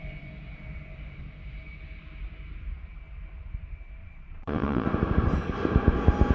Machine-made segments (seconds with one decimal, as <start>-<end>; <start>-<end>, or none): 4.0-4.9